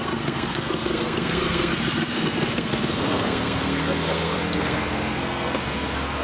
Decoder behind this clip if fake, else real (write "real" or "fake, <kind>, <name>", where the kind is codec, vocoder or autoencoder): fake, codec, SNAC